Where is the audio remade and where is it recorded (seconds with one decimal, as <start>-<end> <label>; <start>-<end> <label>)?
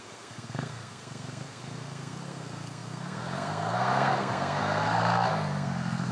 0.0-6.1 remade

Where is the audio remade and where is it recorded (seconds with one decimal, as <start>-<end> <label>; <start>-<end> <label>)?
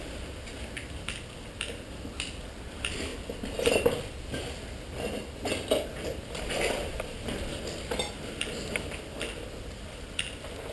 0.0-10.7 recorded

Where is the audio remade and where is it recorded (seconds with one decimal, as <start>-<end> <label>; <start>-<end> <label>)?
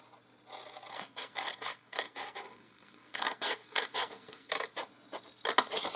0.0-0.9 recorded; 0.9-4.5 remade; 4.5-6.0 recorded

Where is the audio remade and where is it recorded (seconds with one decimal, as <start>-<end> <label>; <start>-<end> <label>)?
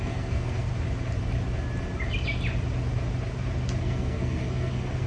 0.0-0.7 remade; 0.7-3.8 recorded; 3.8-5.1 remade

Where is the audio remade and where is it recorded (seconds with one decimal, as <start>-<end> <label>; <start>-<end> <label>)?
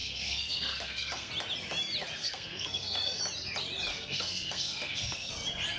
0.0-1.3 remade; 1.3-2.2 recorded; 2.2-3.2 remade; 3.2-3.9 recorded; 3.9-5.3 remade; 5.3-5.8 recorded